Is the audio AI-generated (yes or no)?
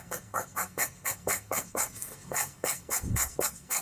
yes